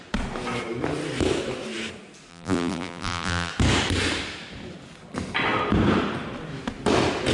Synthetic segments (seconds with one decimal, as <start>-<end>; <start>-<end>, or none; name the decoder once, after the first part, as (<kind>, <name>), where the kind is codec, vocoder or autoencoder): 2.3-3.5 (vocoder, BigVGAN v2)